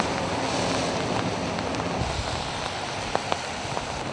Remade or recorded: recorded